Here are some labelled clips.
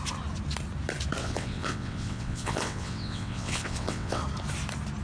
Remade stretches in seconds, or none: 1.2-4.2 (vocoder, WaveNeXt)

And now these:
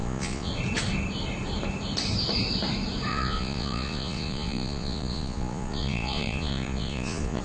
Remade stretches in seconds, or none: 0.0-0.5 (vocoder, Vocos); 3.1-7.4

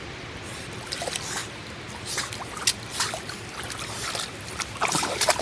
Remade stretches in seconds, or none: none

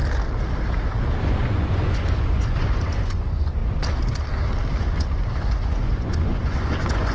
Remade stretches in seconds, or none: 1.2-3.6 (vocoder, Vocos); 4.8-7.1

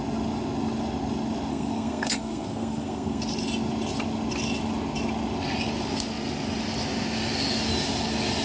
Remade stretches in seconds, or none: 1.5-3.2 (codec, SNAC)

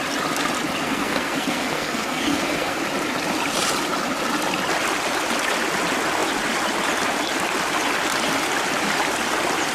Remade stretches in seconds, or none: 0.8-2.8 (codec, SNAC)

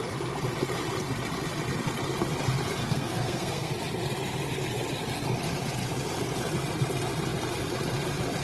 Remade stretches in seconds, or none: 2.8-3.7 (codec, SNAC)

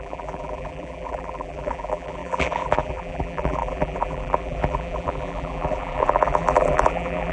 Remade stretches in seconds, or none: 0.0-7.3 (vocoder, BigVGAN v2)